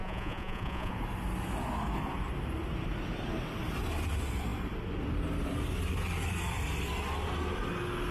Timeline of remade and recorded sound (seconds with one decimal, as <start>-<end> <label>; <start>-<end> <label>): 0.0-0.9 remade; 0.9-8.1 recorded